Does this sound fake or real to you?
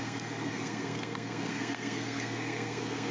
fake